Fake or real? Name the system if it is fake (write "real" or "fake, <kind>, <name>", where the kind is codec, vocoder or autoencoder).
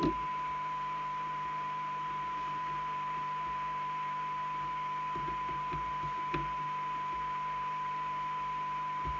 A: real